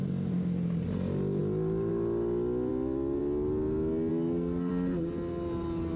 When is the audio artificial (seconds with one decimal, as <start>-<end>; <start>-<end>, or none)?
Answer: 4.1-4.7